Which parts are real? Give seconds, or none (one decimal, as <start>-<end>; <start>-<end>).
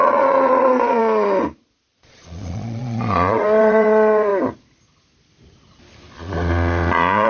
1.0-1.9; 4.3-6.2